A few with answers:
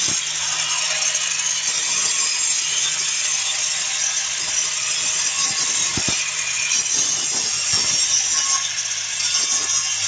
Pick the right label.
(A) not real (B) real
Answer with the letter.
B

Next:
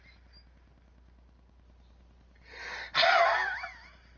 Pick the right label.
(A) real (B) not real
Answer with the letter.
A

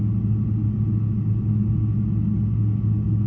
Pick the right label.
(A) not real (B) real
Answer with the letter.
B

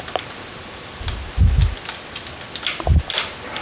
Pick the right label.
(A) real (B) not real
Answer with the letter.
A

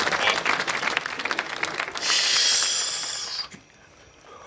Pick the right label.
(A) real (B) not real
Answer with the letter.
A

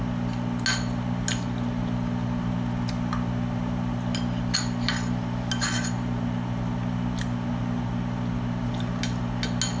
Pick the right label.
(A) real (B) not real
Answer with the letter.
A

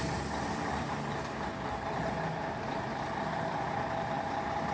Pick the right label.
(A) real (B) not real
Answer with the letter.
A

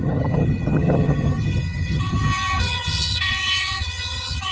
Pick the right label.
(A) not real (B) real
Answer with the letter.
A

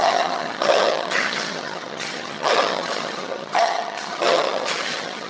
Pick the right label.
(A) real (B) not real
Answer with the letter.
B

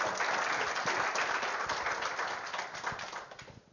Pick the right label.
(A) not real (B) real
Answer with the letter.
B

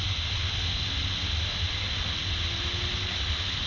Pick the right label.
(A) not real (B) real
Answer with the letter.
B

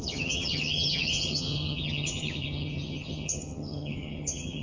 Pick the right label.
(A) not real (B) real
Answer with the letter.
A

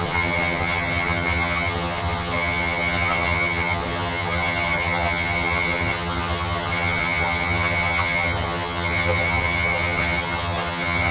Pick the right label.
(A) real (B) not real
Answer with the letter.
B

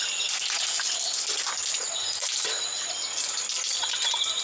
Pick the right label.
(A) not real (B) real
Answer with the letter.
B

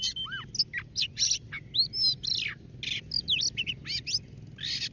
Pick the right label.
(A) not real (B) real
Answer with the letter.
B